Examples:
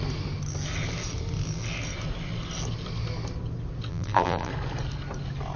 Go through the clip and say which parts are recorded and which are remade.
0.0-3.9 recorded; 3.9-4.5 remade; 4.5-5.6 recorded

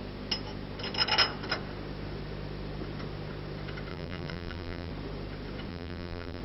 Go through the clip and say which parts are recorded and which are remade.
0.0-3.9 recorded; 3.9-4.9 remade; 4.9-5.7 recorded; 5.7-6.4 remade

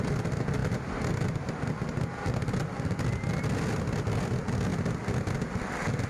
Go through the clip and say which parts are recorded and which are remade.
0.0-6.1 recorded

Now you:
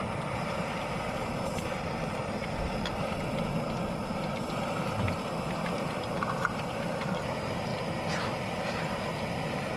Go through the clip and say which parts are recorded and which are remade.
0.0-1.2 remade; 1.2-5.5 recorded; 5.5-7.7 remade; 7.7-8.5 recorded; 8.5-9.8 remade